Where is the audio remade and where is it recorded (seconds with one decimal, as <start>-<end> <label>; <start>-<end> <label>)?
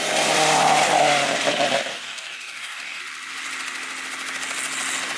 0.0-1.9 recorded; 1.9-3.0 remade; 3.0-5.2 recorded